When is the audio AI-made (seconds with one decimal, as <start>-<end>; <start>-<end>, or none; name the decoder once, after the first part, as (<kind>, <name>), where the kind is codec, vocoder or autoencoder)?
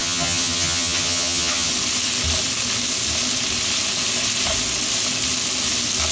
0.0-1.7 (vocoder, HiFi-GAN)